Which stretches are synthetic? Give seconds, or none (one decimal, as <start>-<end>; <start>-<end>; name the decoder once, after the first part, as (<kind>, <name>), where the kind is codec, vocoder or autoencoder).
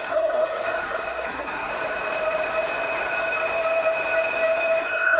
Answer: 0.0-1.7 (codec, SNAC); 4.8-5.2